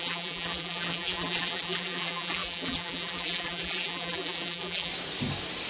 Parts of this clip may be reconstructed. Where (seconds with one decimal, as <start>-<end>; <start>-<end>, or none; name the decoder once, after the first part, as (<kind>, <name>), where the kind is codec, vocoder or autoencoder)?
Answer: 0.0-4.9 (vocoder, BigVGAN v2)